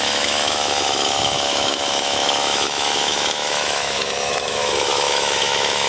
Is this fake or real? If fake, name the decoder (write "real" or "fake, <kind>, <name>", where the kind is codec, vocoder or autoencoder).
fake, autoencoder, DAC-VAE